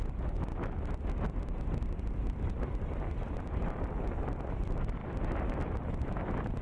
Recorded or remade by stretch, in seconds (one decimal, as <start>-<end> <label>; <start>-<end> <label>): 0.0-0.5 recorded; 0.5-4.5 remade; 4.5-5.0 recorded; 5.0-6.6 remade